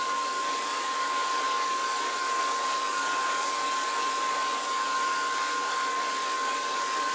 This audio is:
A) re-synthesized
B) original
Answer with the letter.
A